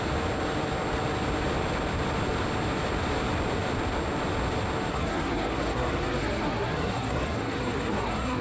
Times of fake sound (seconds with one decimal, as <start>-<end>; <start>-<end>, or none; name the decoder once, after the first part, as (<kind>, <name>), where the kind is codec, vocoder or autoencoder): 4.9-8.4 (codec, SNAC)

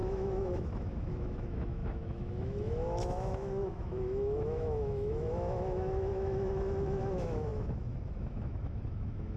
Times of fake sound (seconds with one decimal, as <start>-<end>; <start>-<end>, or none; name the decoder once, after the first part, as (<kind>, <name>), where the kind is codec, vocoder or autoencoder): 0.0-9.4 (autoencoder, DAC-VAE)

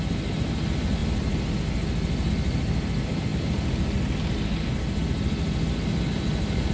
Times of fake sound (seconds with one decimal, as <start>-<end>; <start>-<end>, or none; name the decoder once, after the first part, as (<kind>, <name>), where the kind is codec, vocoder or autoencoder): none

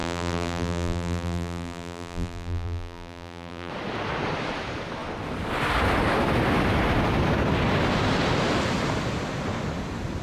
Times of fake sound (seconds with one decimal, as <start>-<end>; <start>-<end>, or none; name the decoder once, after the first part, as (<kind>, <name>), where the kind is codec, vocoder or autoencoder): 0.0-3.7 (vocoder, BigVGAN v2)

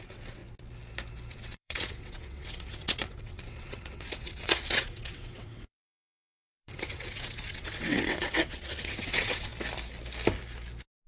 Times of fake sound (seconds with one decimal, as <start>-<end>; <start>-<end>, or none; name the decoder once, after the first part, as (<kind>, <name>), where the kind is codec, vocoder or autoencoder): 0.0-0.4 (vocoder, WaveNeXt); 1.3-9.5